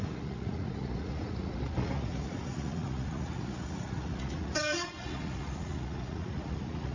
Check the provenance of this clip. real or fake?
fake